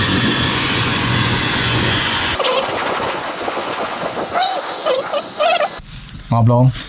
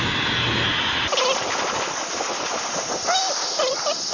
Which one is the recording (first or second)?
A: second